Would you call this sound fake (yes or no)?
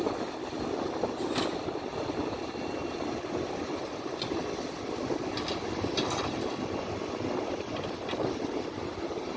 no